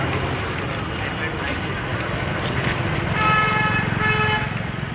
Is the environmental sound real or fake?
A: real